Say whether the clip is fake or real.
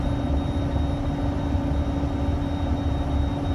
real